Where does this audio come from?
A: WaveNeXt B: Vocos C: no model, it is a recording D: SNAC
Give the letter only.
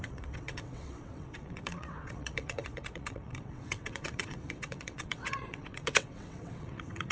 A